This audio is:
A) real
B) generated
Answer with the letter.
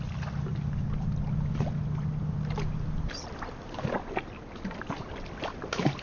A